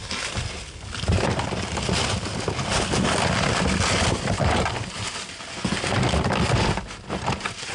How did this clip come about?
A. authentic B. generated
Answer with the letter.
A